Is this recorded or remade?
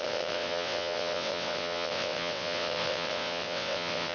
remade